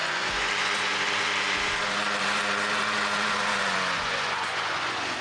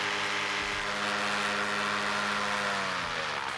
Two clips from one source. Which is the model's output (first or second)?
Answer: first